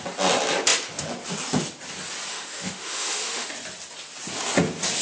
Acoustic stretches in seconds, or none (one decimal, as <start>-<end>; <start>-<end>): 0.0-2.3; 3.5-5.0